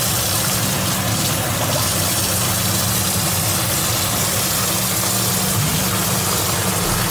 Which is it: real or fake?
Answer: real